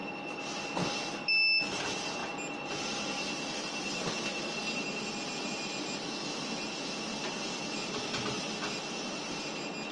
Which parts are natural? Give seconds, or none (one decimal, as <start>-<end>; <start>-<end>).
0.7-9.9